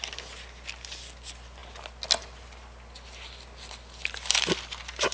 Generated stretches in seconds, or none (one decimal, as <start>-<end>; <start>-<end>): none